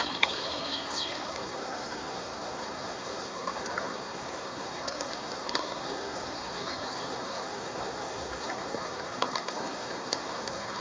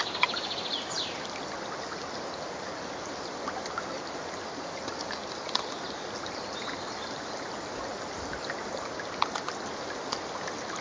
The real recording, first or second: second